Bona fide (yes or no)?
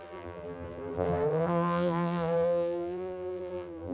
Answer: no